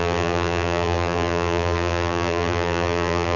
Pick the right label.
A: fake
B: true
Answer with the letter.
A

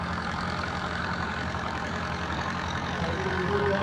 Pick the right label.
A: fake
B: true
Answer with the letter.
A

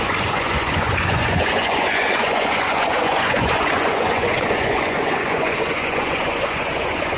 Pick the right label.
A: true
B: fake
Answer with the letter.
B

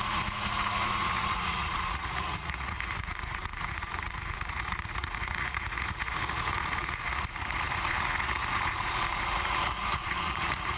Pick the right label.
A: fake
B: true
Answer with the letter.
A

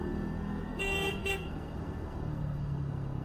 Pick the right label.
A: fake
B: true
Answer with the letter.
A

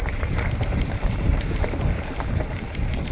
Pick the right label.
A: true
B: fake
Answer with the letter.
B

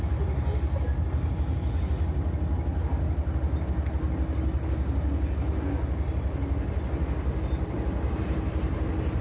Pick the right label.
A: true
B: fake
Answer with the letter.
A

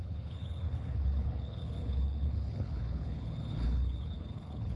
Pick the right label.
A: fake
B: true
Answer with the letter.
A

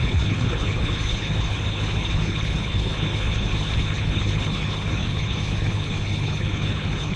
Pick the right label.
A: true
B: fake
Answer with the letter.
B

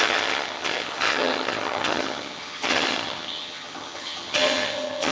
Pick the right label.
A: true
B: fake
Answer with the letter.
B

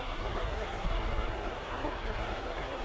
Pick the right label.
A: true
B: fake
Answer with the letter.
B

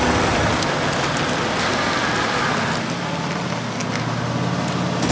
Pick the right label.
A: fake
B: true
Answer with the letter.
B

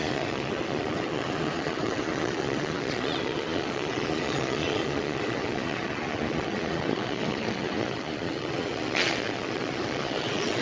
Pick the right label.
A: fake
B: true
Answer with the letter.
A